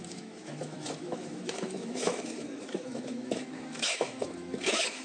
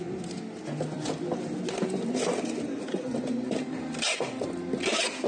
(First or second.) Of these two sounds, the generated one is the first